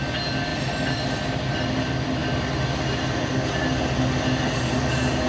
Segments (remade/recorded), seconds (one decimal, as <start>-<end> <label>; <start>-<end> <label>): 0.0-5.3 recorded